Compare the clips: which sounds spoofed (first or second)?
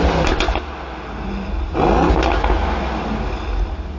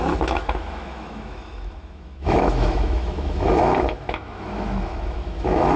second